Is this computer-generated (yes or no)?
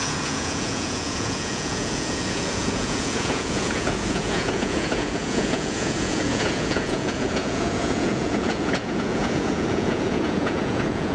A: yes